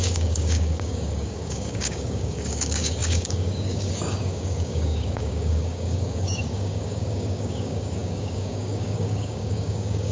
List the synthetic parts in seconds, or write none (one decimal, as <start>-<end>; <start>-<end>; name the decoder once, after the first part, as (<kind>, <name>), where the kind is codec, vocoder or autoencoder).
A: 0.0-10.1 (codec, DAC)